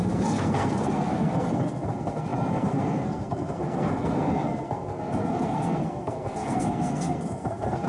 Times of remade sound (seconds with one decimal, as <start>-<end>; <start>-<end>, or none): 0.0-7.9